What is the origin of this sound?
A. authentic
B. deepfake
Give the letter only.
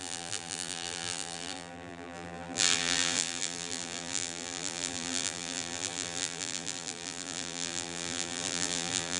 B